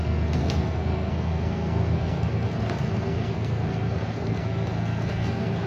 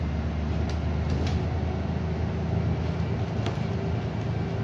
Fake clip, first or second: first